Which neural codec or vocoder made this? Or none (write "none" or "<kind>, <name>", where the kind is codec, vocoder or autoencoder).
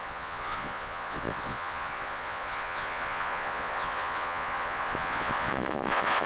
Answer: vocoder, Vocos